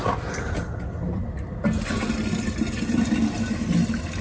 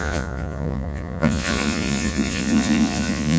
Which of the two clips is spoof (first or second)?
second